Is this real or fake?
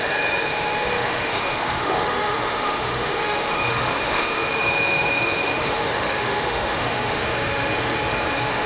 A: fake